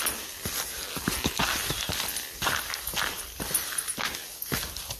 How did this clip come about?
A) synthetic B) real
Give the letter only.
B